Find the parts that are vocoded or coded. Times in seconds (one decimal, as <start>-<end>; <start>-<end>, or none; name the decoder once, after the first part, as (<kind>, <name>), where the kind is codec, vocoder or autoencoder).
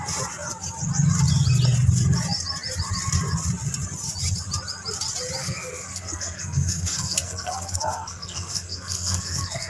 5.4-9.7 (codec, SNAC)